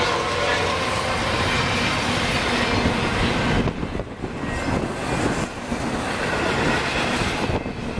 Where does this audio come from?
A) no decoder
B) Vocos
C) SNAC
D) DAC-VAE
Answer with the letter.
A